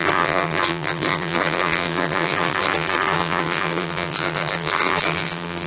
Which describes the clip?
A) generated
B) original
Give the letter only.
A